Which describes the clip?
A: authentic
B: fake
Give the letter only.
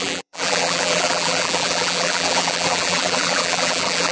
B